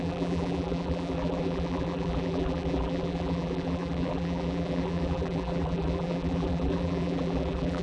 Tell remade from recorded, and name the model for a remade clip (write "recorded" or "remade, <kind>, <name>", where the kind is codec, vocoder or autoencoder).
remade, vocoder, BigVGAN v2